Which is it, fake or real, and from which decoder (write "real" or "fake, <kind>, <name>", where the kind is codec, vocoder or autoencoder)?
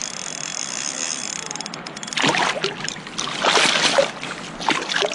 real